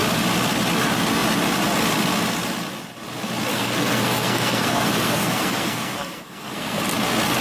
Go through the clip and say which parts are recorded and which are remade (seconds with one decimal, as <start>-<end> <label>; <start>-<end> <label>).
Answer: 0.0-3.5 recorded; 3.5-6.8 remade; 6.8-7.4 recorded